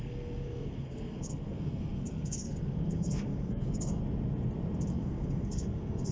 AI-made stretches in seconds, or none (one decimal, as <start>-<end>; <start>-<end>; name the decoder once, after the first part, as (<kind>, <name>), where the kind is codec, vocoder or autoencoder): 0.0-4.0 (codec, SNAC); 4.9-6.1